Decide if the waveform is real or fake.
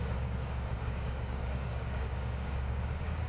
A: fake